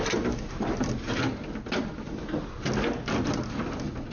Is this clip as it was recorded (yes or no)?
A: yes